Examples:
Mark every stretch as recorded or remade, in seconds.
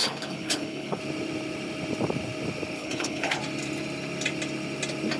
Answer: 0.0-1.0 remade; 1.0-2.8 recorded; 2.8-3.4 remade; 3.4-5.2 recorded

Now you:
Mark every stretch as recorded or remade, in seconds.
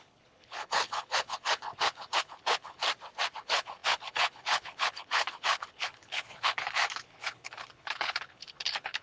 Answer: 0.0-2.8 remade; 2.8-3.4 recorded; 3.4-9.0 remade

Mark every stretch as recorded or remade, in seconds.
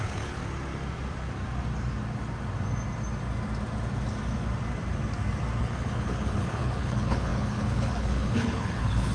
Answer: 0.0-0.4 remade; 0.4-5.6 recorded; 5.6-9.1 remade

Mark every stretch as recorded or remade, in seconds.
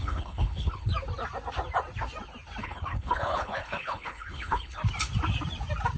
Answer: 0.0-0.9 remade; 0.9-2.6 recorded; 2.6-4.8 remade; 4.8-6.0 recorded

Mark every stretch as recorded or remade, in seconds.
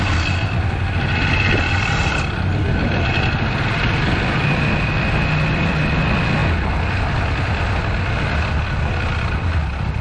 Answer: 0.0-10.0 recorded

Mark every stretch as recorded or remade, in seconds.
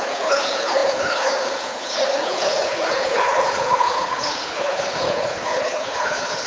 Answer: 0.0-6.5 remade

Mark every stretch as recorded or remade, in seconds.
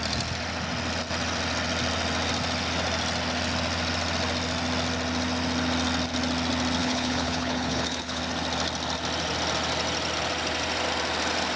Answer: 0.0-6.8 recorded; 6.8-8.2 remade; 8.2-11.6 recorded